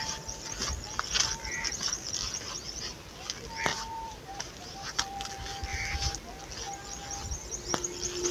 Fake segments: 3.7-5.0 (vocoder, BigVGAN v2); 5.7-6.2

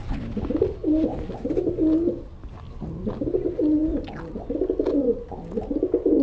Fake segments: 3.8-5.7 (vocoder, BigVGAN v2)

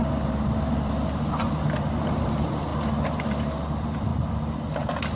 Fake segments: none

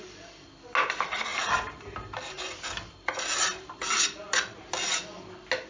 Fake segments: 1.3-4.7 (vocoder, BigVGAN v2)

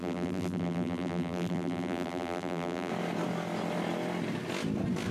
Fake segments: 0.0-2.9 (vocoder, BigVGAN v2)

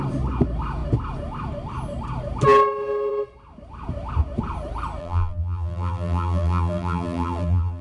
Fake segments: 5.0-7.8 (vocoder, BigVGAN v2)

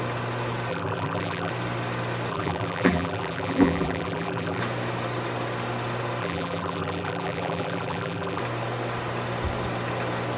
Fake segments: 0.7-1.5 (vocoder, BigVGAN v2); 2.3-4.6; 6.2-8.4